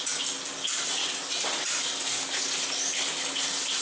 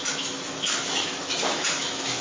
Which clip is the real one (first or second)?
first